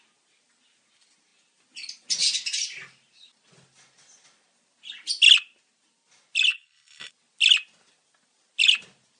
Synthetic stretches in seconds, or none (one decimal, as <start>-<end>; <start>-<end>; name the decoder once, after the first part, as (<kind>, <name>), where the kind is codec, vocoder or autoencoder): 6.5-7.1 (codec, HILCodec)